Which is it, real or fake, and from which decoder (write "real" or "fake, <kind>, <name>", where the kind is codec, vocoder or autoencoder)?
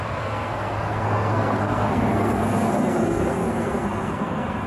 fake, codec, SNAC